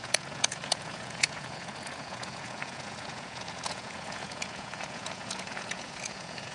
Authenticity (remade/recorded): remade